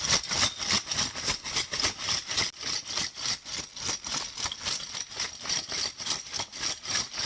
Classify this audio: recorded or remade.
recorded